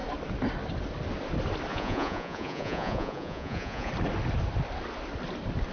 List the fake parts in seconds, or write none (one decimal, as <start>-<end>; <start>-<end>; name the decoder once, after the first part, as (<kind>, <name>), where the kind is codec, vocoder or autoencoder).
1.7-3.9 (vocoder, Vocos)